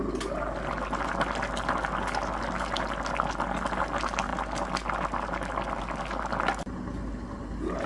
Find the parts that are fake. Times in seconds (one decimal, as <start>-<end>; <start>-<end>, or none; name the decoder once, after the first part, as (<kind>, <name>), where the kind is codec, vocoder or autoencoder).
none